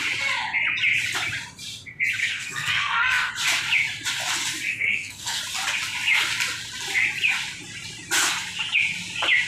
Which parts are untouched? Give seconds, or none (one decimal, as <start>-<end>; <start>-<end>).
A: 0.0-2.2; 3.3-4.7; 5.4-9.5